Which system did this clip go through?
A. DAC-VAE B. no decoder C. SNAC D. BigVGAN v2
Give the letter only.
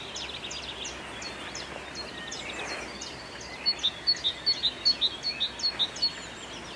B